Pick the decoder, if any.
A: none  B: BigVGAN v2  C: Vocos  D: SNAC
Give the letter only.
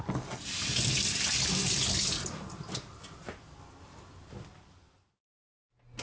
A